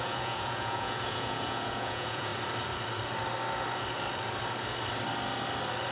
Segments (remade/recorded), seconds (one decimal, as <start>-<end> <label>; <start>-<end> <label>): 0.0-2.3 remade; 2.3-5.9 recorded